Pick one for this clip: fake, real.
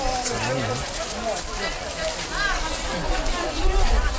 real